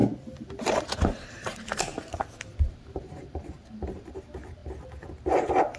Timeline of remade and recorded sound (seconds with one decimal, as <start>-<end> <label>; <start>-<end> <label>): 0.0-0.6 recorded; 0.6-1.9 remade; 1.9-2.7 recorded; 2.7-4.6 remade; 4.6-5.2 recorded; 5.2-5.8 remade